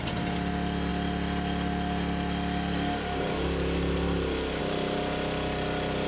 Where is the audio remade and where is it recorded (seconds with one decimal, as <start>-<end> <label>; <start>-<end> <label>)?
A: 0.0-6.1 recorded